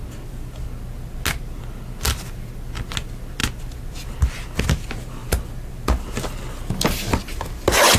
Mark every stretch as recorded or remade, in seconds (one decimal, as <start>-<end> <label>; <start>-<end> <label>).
0.0-3.4 recorded; 3.4-4.2 remade; 4.2-8.0 recorded